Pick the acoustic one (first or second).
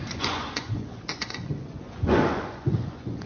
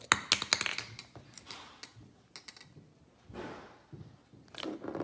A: second